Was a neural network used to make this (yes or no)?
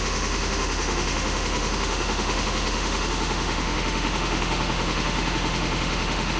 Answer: yes